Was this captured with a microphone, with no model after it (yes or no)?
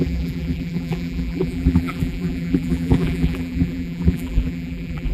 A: no